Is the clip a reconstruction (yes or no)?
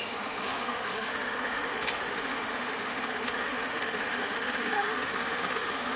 yes